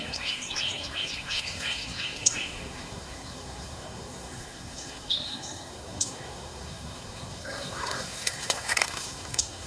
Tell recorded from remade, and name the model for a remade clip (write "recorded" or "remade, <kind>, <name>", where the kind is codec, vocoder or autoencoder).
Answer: remade, codec, SNAC